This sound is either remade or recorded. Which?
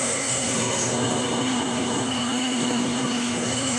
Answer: remade